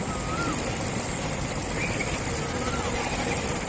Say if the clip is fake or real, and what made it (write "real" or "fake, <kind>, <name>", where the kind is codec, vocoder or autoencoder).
real